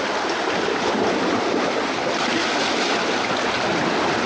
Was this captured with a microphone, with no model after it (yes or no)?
yes